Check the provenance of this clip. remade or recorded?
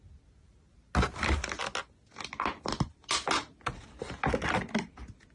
recorded